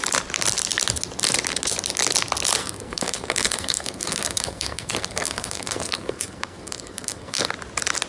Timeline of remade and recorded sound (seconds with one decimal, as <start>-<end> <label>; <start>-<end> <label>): 0.0-2.6 recorded; 2.6-7.5 remade; 7.5-8.1 recorded